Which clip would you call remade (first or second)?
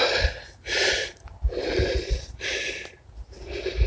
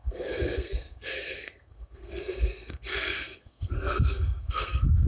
second